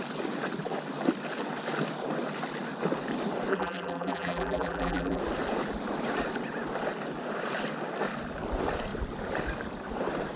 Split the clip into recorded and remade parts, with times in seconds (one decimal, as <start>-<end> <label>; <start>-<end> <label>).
0.0-3.5 recorded; 3.5-5.2 remade; 5.2-10.4 recorded